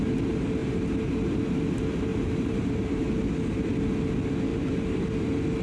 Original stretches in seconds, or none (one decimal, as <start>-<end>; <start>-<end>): 0.0-2.1; 3.1-4.5; 5.0-5.6